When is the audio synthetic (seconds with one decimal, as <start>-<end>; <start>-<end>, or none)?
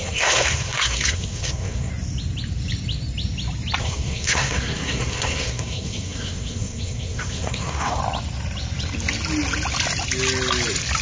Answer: 0.0-1.9; 3.8-8.0